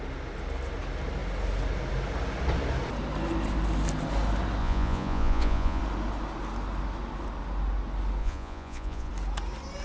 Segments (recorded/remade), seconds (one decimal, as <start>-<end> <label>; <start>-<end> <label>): 0.0-4.6 recorded; 4.6-5.8 remade; 5.8-8.2 recorded; 8.2-9.1 remade; 9.1-9.8 recorded